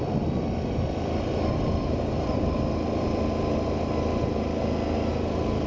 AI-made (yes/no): no